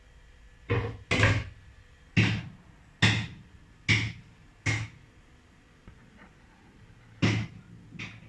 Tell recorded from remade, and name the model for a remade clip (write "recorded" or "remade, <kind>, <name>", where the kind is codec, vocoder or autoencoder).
recorded